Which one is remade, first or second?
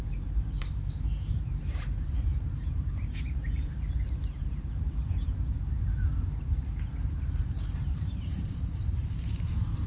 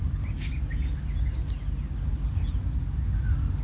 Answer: first